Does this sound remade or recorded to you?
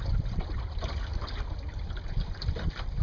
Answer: recorded